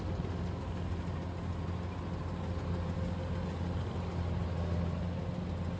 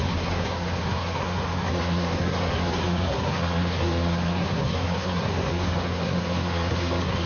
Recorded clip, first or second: first